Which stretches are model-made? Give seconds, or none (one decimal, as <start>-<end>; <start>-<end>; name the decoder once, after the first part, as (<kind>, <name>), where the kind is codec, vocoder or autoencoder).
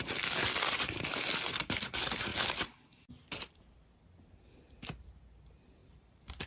5.8-6.5 (vocoder, BigVGAN v2)